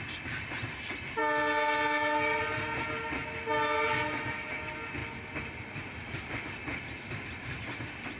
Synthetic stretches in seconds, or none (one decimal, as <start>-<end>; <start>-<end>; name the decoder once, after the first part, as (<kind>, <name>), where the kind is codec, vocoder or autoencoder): none